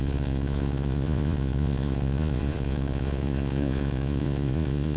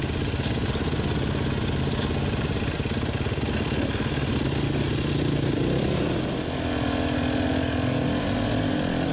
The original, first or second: second